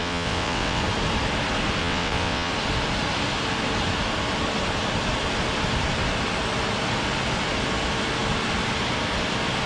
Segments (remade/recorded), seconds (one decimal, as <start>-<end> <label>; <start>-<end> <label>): 0.0-0.8 remade; 0.8-1.8 recorded; 1.8-2.5 remade; 2.5-9.7 recorded